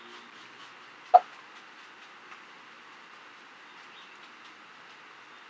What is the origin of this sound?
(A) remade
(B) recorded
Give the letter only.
B